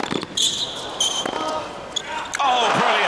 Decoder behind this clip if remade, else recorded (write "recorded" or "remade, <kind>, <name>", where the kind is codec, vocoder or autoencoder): recorded